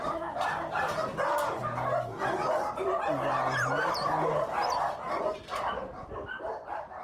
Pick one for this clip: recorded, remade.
recorded